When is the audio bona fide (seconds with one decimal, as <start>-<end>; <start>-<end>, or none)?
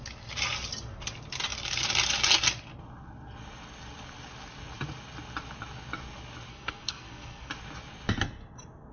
0.0-6.5; 7.5-8.9